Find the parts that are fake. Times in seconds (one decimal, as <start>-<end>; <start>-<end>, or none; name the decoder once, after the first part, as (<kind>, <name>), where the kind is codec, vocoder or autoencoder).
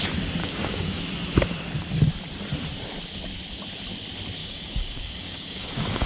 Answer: 0.4-1.0 (codec, DAC); 4.4-6.1